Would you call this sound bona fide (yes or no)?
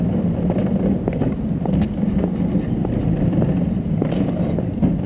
yes